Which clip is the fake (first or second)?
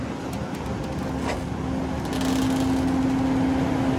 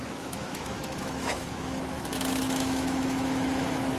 second